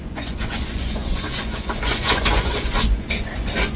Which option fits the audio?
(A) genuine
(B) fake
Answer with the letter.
B